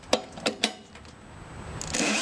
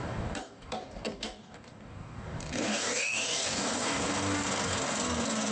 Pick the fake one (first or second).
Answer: second